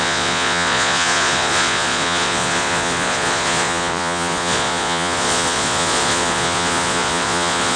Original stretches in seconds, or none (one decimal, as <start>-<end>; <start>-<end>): none

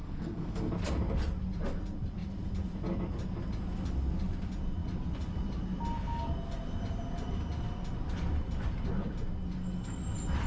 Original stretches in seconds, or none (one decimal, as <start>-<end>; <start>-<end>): 0.7-10.5

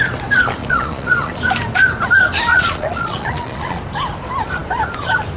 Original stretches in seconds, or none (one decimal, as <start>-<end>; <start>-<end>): 0.0-0.6; 1.4-2.5; 3.8-5.4

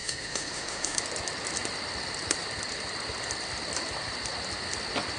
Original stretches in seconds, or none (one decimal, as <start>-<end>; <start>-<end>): 1.0-5.2

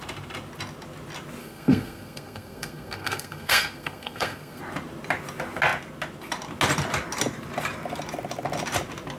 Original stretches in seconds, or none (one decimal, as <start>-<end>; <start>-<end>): 0.0-1.4; 4.6-9.2

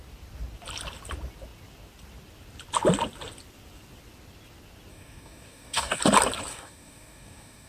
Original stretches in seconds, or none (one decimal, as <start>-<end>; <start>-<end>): 0.0-4.9; 6.0-6.5

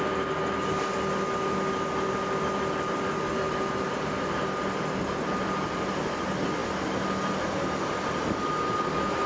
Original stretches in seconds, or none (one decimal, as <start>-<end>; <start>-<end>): 0.0-9.3

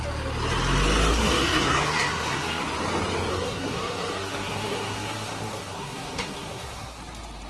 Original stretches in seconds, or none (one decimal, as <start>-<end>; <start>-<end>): 0.0-1.1; 2.6-3.3; 7.0-7.5